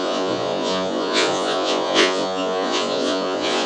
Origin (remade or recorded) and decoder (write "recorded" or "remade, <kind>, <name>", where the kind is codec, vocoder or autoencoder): remade, vocoder, Vocos